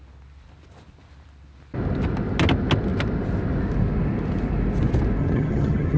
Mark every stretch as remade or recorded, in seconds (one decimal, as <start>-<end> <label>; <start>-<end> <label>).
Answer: 0.0-5.2 recorded; 5.2-6.0 remade